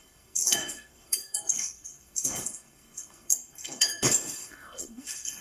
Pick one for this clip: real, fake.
fake